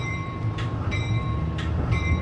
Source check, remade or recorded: remade